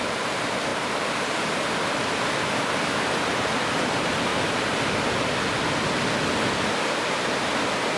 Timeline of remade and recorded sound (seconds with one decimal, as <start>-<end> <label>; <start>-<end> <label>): 0.0-0.7 remade; 0.7-1.5 recorded; 1.5-2.0 remade; 2.0-2.8 recorded; 2.8-4.3 remade; 4.3-6.5 recorded; 6.5-8.0 remade